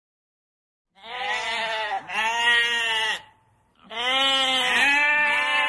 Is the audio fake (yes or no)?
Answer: no